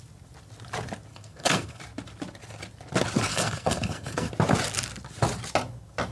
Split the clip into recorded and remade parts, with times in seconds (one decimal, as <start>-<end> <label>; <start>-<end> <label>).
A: 0.0-1.1 recorded; 1.1-1.8 remade; 1.8-3.3 recorded; 3.3-4.3 remade; 4.3-6.1 recorded